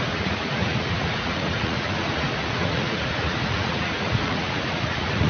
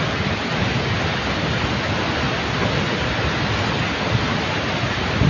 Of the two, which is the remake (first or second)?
first